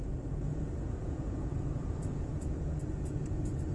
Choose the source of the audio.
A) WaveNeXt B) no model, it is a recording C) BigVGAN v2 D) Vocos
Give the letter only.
D